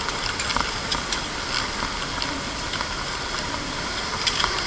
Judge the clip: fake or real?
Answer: real